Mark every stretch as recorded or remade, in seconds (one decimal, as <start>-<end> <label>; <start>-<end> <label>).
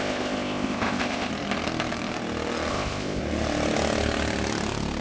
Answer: 0.0-1.3 remade; 1.3-2.7 recorded; 2.7-3.2 remade; 3.2-5.0 recorded